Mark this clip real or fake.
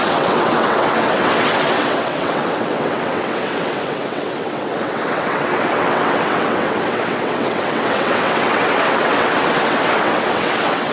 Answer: fake